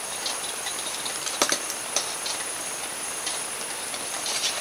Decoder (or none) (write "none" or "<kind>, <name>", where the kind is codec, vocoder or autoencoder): vocoder, BigVGAN v2